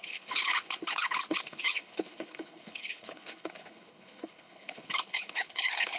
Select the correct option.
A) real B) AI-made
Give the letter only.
B